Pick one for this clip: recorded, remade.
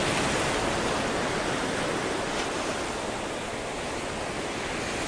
recorded